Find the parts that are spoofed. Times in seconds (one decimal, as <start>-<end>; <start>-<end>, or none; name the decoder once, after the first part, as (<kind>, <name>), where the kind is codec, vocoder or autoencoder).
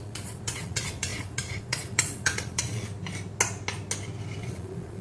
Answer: 0.0-2.9 (vocoder, Vocos); 4.4-5.0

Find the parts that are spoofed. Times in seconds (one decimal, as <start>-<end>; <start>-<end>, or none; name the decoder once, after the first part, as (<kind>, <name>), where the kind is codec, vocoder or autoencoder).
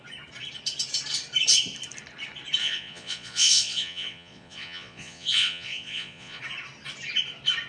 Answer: 2.6-6.4 (vocoder, Vocos)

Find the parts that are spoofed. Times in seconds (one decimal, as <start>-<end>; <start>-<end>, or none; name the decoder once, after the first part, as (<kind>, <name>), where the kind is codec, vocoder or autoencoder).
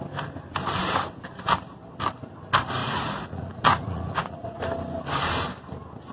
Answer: 2.8-4.6 (vocoder, Vocos)